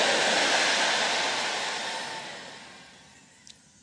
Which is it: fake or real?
real